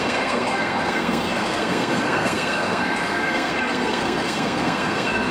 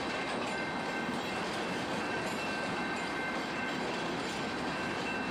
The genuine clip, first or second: second